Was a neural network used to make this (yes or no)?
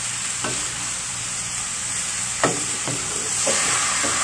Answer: no